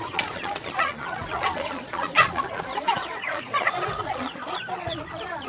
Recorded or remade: remade